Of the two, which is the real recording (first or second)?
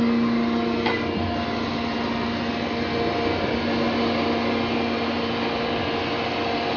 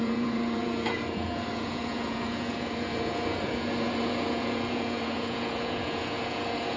first